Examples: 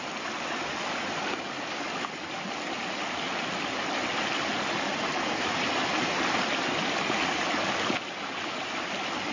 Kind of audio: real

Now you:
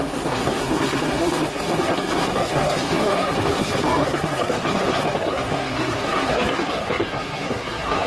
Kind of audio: fake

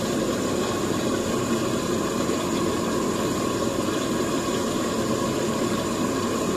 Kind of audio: fake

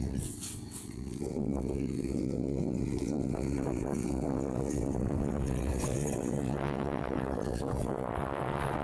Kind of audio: fake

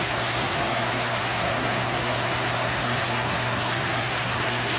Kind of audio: fake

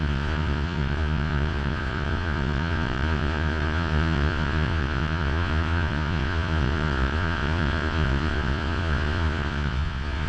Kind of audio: fake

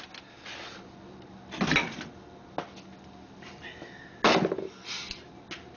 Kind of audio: real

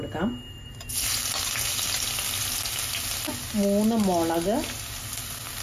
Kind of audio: real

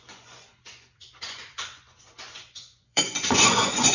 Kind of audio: fake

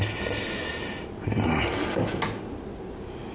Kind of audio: real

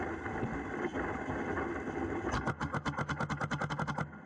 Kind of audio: real